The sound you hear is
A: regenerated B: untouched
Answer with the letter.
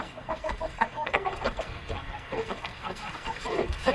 A